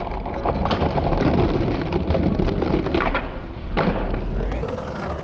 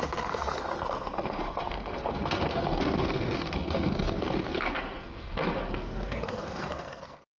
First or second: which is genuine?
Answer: first